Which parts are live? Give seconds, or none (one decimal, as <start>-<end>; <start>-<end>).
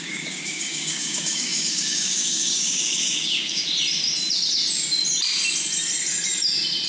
3.6-6.9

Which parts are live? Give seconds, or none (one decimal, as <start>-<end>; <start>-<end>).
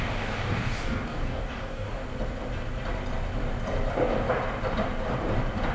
2.0-5.7